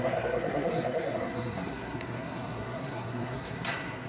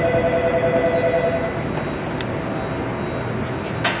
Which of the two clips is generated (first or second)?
first